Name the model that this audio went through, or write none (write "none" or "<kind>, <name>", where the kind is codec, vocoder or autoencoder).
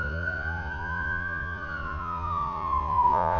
vocoder, Vocos